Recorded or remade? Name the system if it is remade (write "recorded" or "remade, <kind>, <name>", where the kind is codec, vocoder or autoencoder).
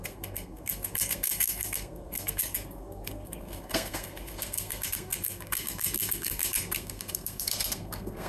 remade, codec, SNAC